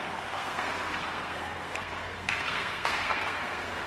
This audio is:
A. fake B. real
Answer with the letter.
A